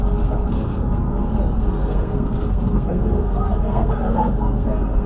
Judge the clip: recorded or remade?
remade